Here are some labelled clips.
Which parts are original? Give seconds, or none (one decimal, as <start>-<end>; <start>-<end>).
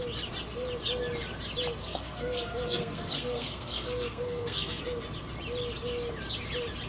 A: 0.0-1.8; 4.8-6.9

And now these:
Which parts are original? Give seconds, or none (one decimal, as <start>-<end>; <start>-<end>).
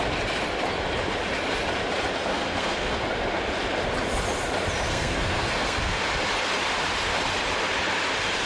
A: 0.0-2.3; 3.0-4.9; 6.0-8.5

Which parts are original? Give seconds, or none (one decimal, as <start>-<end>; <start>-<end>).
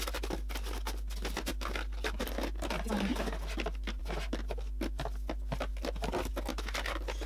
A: 0.0-7.3